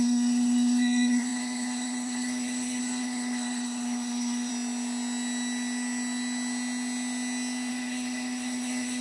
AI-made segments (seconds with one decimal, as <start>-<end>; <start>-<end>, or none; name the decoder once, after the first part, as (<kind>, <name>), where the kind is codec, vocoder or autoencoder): 0.0-4.5 (codec, SNAC); 7.7-9.0